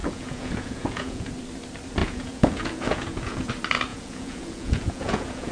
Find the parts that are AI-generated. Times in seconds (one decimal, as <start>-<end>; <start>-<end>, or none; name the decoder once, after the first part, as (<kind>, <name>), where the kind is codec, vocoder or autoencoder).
0.0-1.3 (vocoder, Vocos); 2.0-3.5; 3.9-5.5